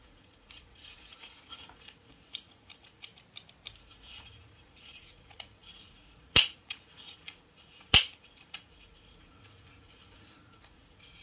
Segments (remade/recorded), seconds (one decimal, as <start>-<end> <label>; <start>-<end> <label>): 0.0-3.1 remade; 3.1-3.8 recorded; 3.8-11.2 remade